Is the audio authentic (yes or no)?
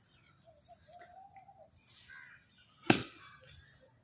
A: yes